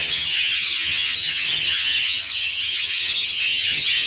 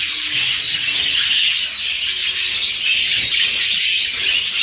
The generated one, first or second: first